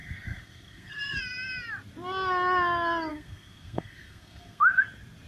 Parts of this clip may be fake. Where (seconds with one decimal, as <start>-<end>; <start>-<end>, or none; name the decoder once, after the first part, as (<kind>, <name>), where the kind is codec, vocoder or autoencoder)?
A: 0.0-1.2 (codec, SNAC); 3.1-4.6